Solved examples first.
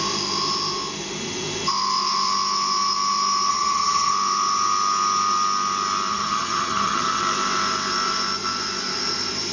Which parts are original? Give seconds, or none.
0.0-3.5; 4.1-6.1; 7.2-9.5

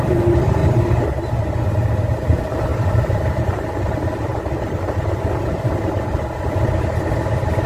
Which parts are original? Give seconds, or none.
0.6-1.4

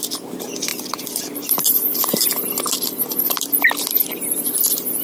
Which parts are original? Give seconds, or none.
0.0-0.7; 3.7-5.0

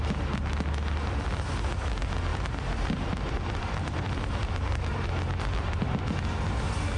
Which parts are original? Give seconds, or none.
0.0-2.3; 5.1-7.0

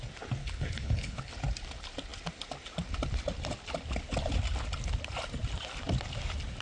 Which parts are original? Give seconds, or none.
0.0-0.4; 1.3-6.6